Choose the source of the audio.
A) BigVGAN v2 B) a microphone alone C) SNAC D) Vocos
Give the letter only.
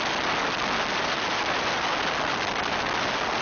B